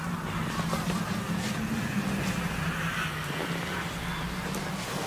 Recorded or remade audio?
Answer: recorded